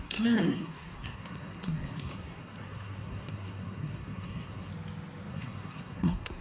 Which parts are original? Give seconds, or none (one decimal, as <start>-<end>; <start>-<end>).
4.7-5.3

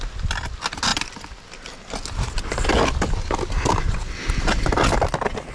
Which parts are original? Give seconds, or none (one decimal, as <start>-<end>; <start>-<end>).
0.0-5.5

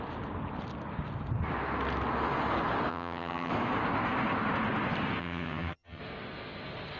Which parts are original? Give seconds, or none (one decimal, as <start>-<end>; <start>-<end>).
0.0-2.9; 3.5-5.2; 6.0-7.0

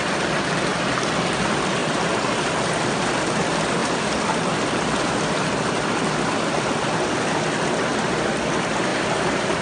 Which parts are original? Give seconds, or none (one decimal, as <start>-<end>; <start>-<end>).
0.0-1.8; 2.5-8.9